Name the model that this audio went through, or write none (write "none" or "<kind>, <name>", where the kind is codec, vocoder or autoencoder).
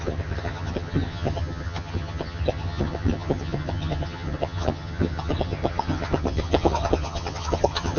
vocoder, HiFi-GAN